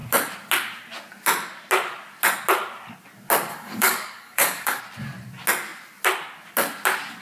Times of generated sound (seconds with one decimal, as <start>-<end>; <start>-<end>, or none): 3.5-4.8